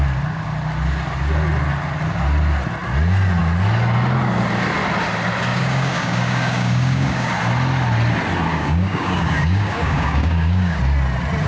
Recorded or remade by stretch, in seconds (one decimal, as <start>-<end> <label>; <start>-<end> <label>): 0.0-5.5 recorded; 5.5-7.3 remade; 7.3-8.5 recorded; 8.5-10.8 remade; 10.8-11.5 recorded